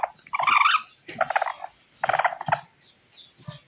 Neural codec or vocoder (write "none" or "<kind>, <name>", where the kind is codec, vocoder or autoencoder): none